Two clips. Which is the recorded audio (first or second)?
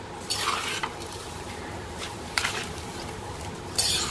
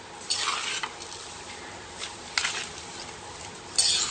second